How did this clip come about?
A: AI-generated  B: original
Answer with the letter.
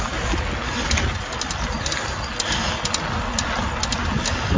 B